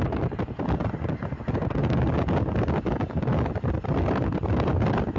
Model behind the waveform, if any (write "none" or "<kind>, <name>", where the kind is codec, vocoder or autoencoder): none